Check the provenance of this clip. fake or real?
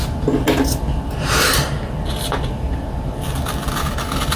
real